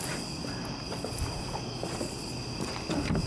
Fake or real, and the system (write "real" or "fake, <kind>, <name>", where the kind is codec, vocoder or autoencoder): real